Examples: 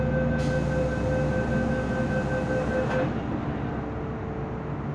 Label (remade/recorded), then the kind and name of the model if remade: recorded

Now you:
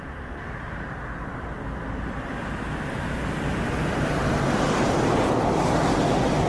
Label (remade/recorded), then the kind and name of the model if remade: remade, vocoder, BigVGAN v2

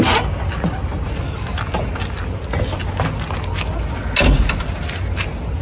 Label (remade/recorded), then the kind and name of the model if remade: recorded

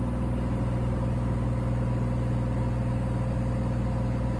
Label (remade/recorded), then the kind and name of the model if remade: recorded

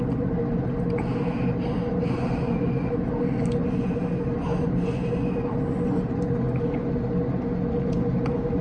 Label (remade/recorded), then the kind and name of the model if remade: recorded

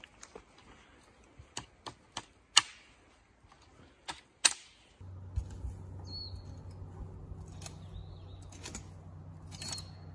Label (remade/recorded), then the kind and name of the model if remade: recorded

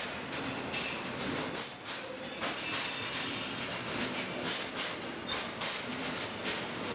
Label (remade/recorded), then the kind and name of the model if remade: recorded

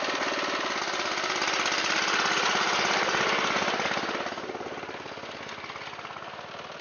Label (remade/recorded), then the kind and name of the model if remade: recorded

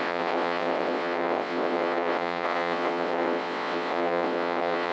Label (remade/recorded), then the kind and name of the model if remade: remade, vocoder, WaveNeXt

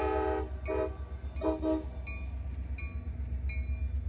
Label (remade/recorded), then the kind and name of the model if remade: recorded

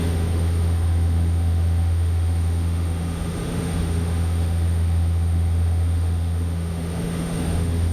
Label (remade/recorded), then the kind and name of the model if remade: remade, autoencoder, DAC-VAE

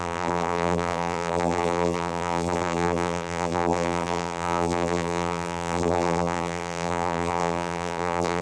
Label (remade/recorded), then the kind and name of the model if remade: remade, vocoder, BigVGAN v2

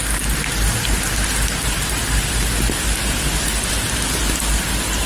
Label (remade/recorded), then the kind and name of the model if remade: recorded